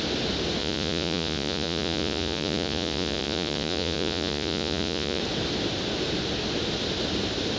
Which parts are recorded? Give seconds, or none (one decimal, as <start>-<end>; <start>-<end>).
0.0-0.6; 5.2-7.6